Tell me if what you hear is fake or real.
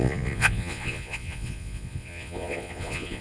fake